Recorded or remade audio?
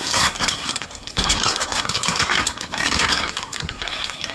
remade